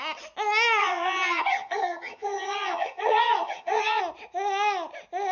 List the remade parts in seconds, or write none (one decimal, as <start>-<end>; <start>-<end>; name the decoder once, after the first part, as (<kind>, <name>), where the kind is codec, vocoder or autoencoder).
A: 0.8-4.0 (vocoder, HiFi-GAN)